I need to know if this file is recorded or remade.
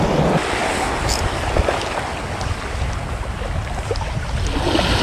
recorded